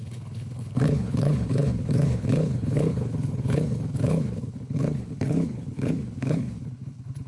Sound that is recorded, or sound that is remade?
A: remade